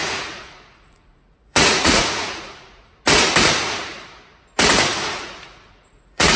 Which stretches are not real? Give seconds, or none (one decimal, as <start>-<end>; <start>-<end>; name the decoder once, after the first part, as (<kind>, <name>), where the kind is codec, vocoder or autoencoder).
0.0-2.9 (vocoder, Vocos); 4.9-6.4

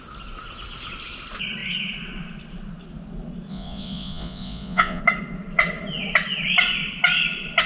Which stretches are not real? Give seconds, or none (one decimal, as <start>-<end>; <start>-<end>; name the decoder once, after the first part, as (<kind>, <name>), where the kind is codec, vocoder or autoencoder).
3.5-5.0 (vocoder, Vocos)

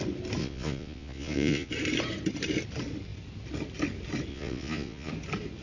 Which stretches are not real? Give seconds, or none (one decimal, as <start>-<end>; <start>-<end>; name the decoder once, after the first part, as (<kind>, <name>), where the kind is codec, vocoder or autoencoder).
0.4-1.7 (vocoder, Vocos); 4.3-5.1

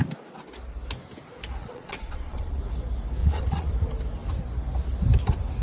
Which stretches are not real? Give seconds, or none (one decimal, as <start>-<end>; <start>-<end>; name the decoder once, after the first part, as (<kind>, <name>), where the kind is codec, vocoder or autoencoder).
1.6-2.6 (vocoder, Vocos); 3.2-3.7

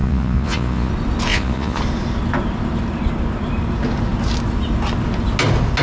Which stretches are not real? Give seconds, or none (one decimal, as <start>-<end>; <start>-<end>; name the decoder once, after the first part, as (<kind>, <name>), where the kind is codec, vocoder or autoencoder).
0.0-0.9 (vocoder, Vocos); 1.3-1.8

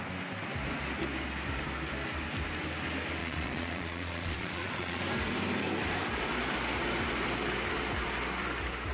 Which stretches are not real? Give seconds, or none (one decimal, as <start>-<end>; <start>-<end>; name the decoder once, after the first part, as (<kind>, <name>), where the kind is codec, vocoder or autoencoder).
3.2-5.0 (vocoder, Vocos)

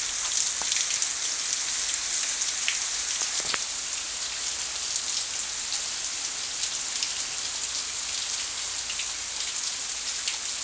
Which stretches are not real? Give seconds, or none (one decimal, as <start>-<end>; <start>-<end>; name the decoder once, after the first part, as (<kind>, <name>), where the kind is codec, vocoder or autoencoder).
none

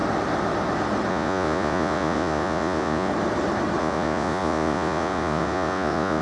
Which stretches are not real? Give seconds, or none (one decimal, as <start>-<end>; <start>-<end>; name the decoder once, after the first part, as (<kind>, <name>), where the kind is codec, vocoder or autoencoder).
1.1-3.1 (vocoder, Vocos); 3.8-6.2